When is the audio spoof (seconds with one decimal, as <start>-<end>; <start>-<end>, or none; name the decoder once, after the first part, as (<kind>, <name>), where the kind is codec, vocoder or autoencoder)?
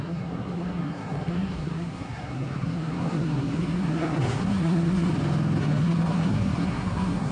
0.0-5.1 (codec, SNAC); 5.6-7.3